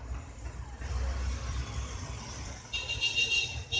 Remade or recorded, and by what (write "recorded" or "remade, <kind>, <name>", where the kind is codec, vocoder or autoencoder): remade, vocoder, BigVGAN v2